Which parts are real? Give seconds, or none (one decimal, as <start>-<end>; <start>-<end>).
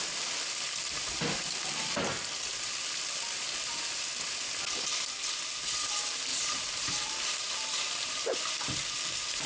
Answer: 0.0-6.3; 8.9-9.5